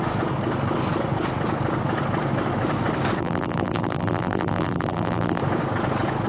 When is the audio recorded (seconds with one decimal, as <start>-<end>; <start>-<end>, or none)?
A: 0.0-3.2; 5.4-6.3